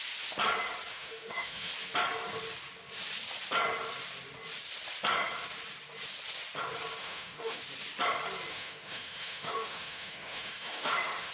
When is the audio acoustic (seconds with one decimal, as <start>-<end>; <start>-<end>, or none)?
0.0-0.9; 1.7-7.0; 7.6-8.5